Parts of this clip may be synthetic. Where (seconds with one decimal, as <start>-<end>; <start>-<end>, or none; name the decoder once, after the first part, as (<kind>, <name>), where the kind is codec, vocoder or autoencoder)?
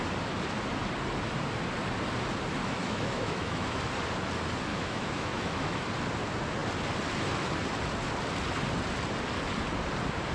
2.6-3.8 (autoencoder, DAC-VAE); 4.7-5.8